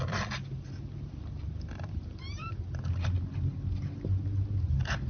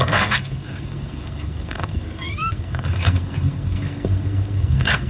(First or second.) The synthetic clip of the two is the second